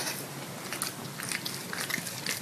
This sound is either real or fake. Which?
real